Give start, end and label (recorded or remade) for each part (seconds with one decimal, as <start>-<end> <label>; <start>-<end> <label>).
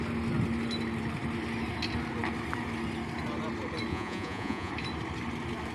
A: 0.0-3.9 recorded; 3.9-4.7 remade; 4.7-5.7 recorded